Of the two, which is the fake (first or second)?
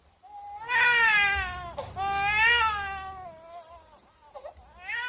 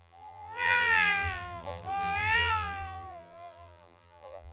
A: second